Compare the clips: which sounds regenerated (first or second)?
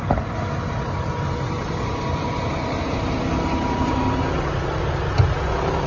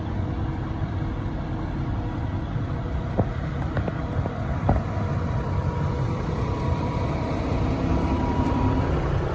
second